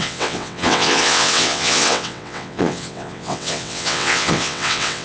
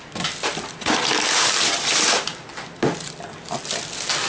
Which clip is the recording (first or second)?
second